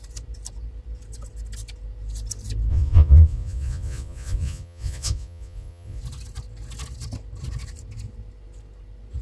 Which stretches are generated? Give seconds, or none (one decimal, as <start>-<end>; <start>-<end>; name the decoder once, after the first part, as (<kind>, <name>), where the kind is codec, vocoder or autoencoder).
2.7-6.0 (vocoder, Vocos)